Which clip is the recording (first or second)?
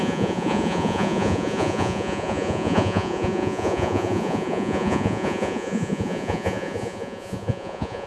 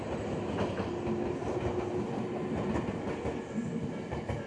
second